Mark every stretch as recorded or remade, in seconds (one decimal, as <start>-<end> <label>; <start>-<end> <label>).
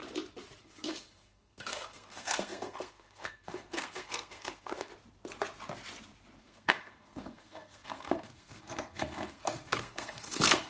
0.0-0.6 recorded; 0.6-4.9 remade; 4.9-6.4 recorded; 6.4-10.7 remade